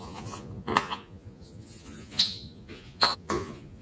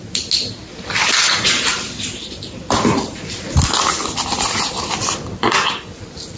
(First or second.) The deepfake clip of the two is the first